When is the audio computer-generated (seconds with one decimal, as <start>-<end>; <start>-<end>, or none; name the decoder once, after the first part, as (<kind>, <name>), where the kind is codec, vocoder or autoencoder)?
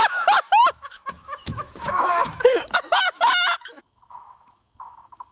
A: 0.0-5.3 (autoencoder, DAC-VAE)